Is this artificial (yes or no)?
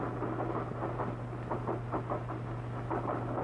no